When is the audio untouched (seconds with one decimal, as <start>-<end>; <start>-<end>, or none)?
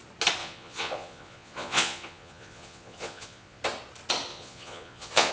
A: 0.0-0.4; 3.6-4.3